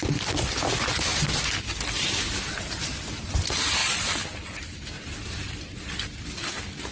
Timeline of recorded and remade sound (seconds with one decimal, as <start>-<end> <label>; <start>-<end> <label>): 0.0-6.9 recorded